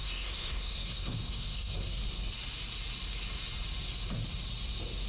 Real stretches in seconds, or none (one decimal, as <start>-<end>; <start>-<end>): 2.0-5.1